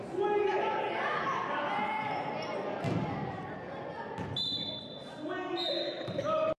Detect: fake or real real